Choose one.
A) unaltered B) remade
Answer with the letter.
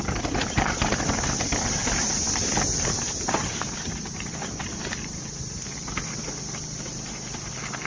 A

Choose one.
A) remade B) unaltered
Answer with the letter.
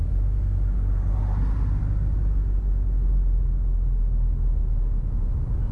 B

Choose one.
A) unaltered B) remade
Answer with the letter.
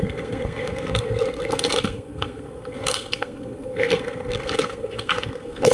B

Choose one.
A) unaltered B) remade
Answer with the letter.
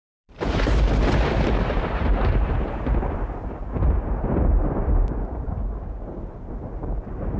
B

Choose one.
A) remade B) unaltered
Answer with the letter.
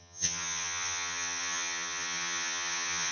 A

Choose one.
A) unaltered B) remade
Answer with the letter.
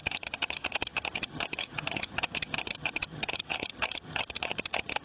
B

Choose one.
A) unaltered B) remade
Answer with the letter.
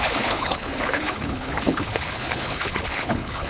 B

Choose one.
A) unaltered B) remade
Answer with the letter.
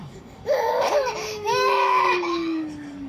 B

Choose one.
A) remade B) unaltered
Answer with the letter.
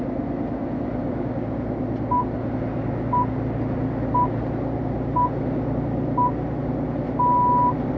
B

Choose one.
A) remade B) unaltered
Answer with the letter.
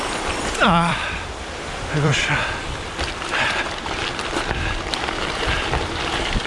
A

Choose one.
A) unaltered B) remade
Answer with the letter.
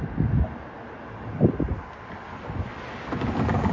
A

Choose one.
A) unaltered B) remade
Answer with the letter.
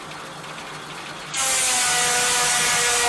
A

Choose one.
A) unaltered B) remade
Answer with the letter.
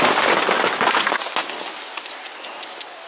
A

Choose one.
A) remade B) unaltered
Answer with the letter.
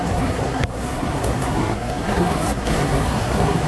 A